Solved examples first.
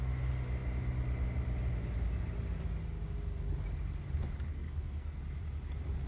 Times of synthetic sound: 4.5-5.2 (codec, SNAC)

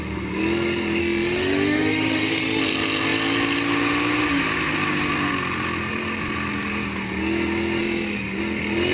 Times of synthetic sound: 1.0-2.6 (autoencoder, DAC-VAE); 7.8-8.4

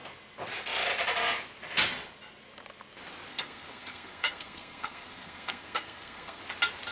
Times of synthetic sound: 3.3-6.4 (codec, SNAC)

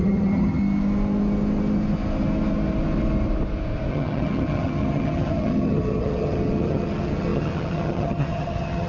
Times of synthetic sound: 0.0-0.6 (vocoder, HiFi-GAN); 3.9-8.9